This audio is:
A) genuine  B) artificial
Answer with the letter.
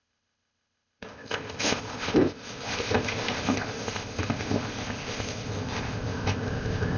B